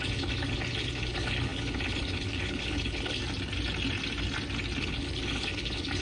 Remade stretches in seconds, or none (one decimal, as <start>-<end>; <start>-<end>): 0.0-3.2; 4.8-6.0